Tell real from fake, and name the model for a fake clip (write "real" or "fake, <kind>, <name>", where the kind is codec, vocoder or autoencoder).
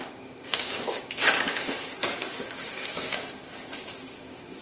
fake, codec, DAC